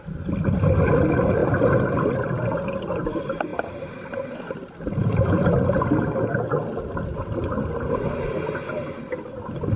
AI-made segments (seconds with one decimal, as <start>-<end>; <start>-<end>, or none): none